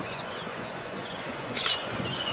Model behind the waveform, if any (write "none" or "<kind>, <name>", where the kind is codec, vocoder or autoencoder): vocoder, Vocos